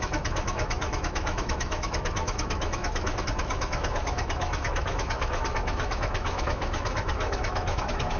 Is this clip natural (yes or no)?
no